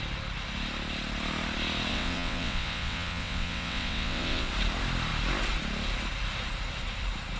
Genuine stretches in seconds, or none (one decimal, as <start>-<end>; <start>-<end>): 0.0-1.9; 4.5-7.4